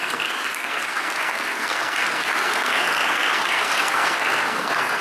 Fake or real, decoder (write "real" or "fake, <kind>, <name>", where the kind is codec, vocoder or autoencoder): fake, codec, SNAC